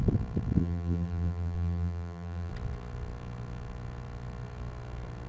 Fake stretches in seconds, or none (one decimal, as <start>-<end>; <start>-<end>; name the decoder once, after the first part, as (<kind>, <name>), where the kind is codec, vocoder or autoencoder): 0.6-2.5 (vocoder, BigVGAN v2)